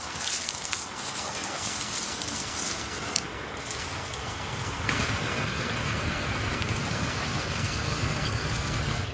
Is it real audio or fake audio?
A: fake